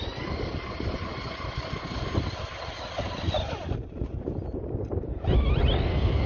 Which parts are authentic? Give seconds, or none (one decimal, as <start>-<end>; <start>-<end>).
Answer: 0.0-6.3